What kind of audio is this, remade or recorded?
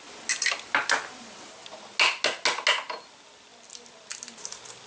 recorded